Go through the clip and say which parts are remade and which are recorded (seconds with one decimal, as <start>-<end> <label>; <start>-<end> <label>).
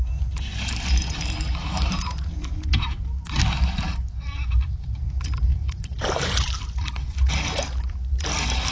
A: 0.0-1.6 recorded; 1.6-3.4 remade; 3.4-5.5 recorded; 5.5-6.6 remade; 6.6-8.7 recorded